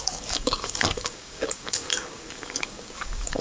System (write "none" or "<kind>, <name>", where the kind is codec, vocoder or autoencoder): codec, DAC